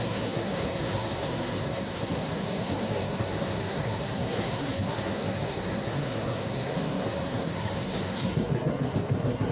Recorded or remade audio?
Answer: remade